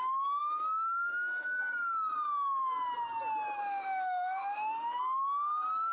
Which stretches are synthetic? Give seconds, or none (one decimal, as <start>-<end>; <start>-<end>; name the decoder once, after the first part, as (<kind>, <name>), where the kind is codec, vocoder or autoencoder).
0.4-1.6 (autoencoder, DAC-VAE); 3.6-5.0